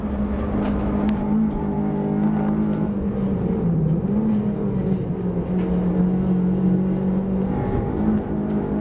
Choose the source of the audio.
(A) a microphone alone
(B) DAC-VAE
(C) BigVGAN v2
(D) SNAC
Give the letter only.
A